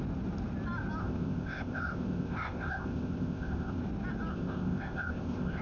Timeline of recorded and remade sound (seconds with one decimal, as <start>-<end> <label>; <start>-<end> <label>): 0.0-1.0 recorded; 1.0-3.8 remade; 3.8-4.3 recorded; 4.3-5.6 remade